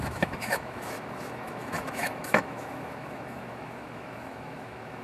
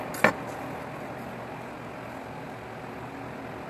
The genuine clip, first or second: second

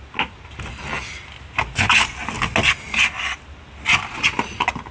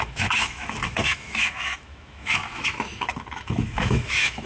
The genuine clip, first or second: first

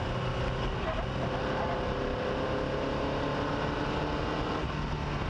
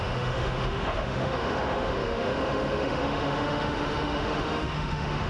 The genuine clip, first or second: first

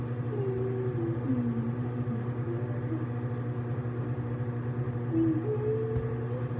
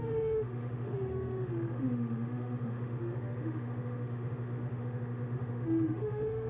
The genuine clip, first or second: first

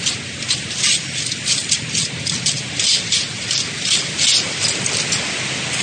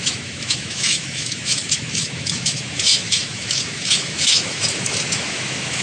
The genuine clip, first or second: first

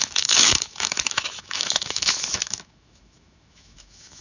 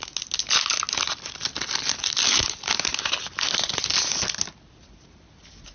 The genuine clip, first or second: second